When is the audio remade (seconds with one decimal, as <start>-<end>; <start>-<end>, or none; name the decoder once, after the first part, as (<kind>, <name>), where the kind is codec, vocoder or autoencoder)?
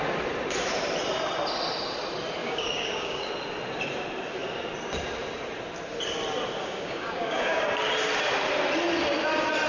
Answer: 2.4-3.3 (codec, DAC); 6.6-7.6